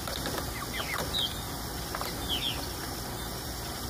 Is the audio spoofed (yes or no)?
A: no